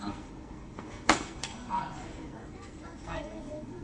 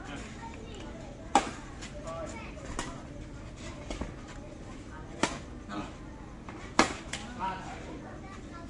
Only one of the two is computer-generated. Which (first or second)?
first